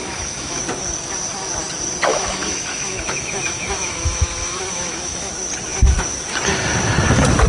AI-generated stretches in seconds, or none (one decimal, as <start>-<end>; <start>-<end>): 0.0-0.6; 2.1-5.3